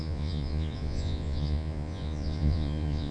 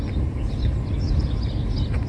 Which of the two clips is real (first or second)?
second